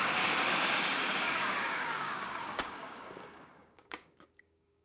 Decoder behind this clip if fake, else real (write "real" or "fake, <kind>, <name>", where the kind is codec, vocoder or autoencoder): fake, codec, DAC